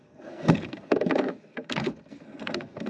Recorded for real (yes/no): no